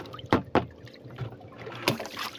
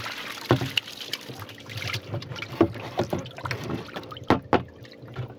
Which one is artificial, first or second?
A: first